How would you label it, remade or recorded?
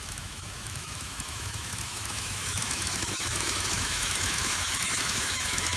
remade